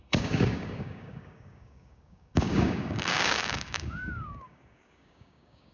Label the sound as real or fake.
fake